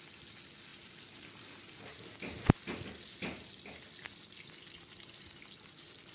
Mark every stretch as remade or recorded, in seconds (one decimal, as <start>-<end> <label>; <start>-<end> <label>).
0.0-6.1 recorded